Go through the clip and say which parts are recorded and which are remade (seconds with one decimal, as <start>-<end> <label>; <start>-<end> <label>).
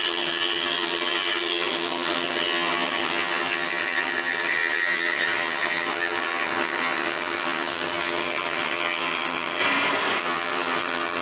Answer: 0.0-9.6 remade; 9.6-10.2 recorded; 10.2-11.2 remade